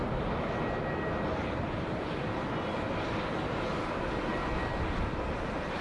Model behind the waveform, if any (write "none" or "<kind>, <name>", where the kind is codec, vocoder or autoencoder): none